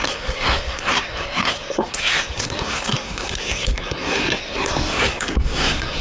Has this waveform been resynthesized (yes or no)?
yes